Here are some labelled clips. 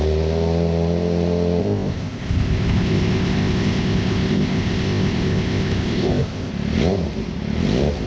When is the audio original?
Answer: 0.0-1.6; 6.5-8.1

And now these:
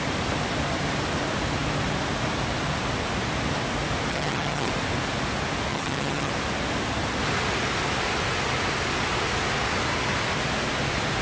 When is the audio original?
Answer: 0.0-4.1; 4.7-5.7; 6.3-11.2

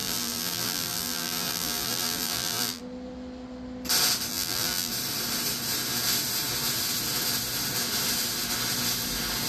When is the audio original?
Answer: 2.8-4.3; 4.9-9.5

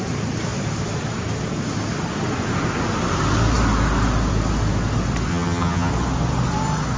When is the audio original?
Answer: 0.0-5.3; 5.9-7.0

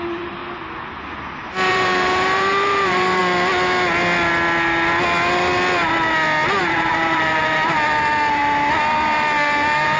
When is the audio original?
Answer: 0.4-1.7; 3.2-6.6

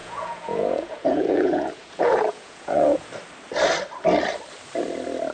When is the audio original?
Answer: 3.1-5.3